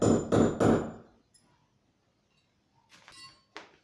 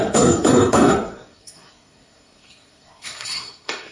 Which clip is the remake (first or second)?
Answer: second